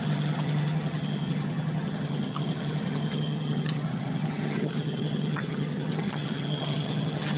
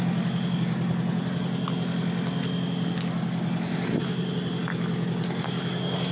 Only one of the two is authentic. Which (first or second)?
second